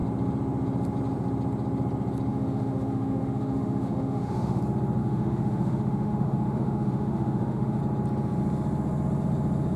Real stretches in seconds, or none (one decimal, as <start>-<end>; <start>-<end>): 0.0-2.3; 4.6-5.0; 7.8-9.8